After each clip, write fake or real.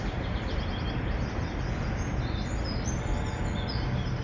real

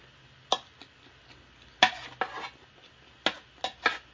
real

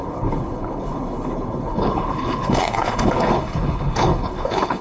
fake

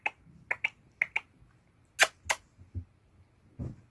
real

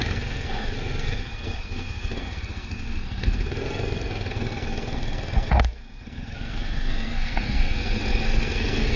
fake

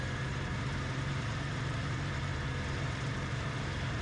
fake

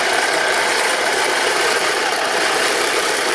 fake